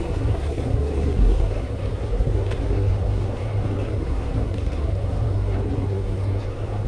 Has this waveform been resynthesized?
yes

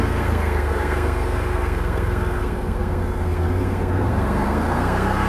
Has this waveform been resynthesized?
yes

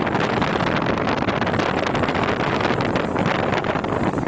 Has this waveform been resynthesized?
no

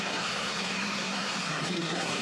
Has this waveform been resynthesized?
yes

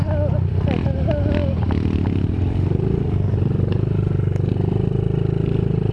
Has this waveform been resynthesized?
no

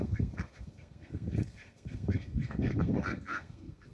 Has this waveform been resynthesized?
yes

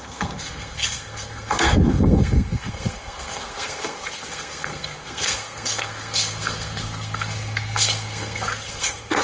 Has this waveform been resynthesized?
yes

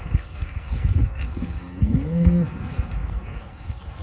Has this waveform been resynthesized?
yes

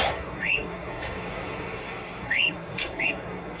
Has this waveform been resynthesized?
yes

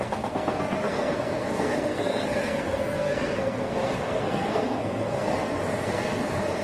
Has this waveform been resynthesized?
yes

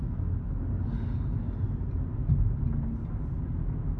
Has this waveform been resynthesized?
no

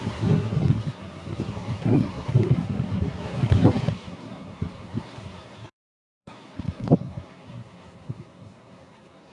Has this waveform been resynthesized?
yes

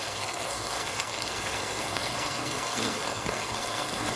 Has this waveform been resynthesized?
yes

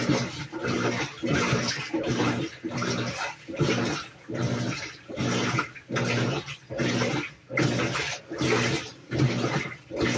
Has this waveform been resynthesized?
no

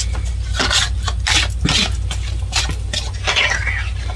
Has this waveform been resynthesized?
no